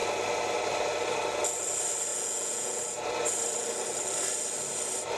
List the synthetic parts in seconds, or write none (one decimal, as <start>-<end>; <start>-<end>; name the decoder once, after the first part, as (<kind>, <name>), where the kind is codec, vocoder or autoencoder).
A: 2.1-2.8 (vocoder, Vocos)

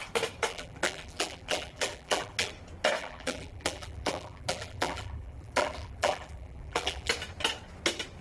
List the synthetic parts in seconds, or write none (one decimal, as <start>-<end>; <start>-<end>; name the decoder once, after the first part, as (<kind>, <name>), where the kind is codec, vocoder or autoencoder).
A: 0.5-2.5 (vocoder, BigVGAN v2); 3.0-7.1

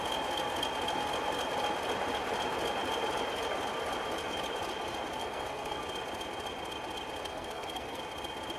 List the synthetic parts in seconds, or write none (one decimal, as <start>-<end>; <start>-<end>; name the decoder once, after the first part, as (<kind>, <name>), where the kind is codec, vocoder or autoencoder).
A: 5.2-5.8 (codec, SNAC); 7.2-8.0

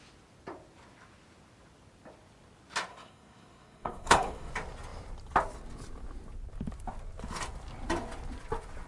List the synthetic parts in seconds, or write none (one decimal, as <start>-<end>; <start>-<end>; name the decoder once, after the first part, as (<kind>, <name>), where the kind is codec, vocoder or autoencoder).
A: 2.9-4.5 (codec, SNAC)